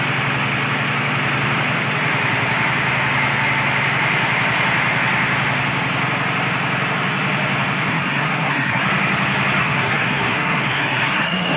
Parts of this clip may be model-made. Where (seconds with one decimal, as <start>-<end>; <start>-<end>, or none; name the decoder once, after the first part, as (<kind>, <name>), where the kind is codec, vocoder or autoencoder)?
7.9-8.8 (codec, SNAC); 9.6-11.6